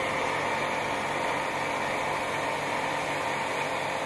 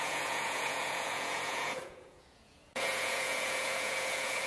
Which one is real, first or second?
first